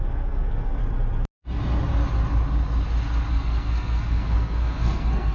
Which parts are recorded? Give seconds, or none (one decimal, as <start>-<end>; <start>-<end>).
0.8-3.3

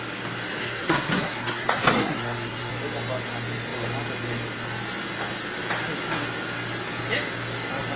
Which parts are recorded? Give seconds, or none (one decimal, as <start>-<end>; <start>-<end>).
0.0-0.6; 2.7-8.0

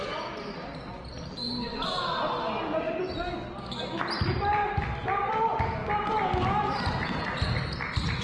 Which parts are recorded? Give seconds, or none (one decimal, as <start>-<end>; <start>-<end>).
0.0-8.2

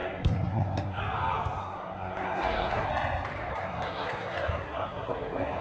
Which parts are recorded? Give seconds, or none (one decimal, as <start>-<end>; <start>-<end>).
1.0-1.6; 2.9-3.5

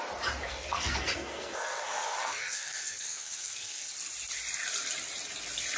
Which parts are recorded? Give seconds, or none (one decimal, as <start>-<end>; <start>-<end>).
0.0-0.4; 3.9-5.8

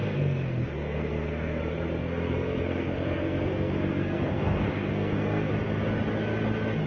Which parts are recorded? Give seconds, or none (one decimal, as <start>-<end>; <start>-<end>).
1.6-2.0; 5.5-6.9

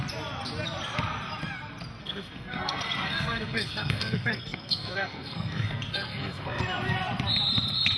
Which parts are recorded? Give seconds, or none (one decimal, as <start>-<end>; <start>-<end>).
0.0-2.0; 6.6-8.0

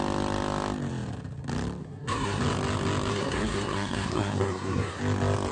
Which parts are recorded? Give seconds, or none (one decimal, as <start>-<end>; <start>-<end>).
0.0-1.8; 2.4-3.1; 5.0-5.5